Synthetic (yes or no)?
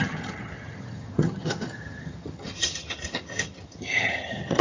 yes